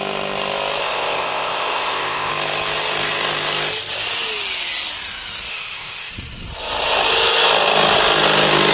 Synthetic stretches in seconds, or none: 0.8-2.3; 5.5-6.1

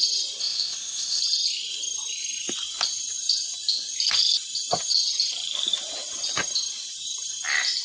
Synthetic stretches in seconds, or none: 0.4-1.2

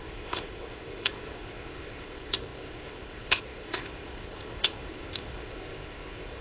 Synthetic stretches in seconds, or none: 0.0-6.4

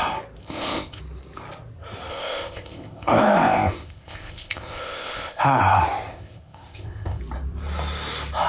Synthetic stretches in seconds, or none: 0.4-1.0; 2.1-5.4; 6.1-7.2